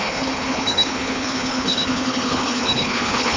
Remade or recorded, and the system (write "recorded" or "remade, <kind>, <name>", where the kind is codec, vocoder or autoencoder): remade, codec, HILCodec